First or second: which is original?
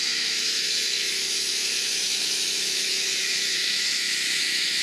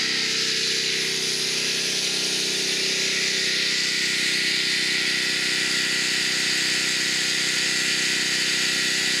second